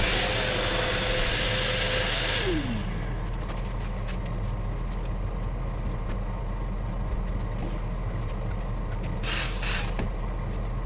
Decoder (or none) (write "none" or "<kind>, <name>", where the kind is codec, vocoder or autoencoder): none